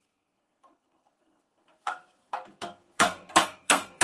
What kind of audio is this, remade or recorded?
remade